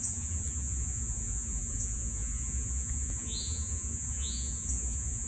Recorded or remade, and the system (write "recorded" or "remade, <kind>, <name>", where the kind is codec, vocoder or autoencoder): remade, vocoder, Vocos